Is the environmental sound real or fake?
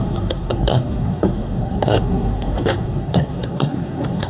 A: fake